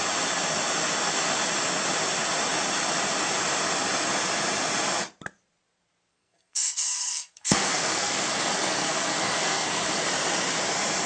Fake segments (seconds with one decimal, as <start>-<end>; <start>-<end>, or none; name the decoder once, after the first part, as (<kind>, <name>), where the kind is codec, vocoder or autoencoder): 6.1-10.0 (codec, SNAC)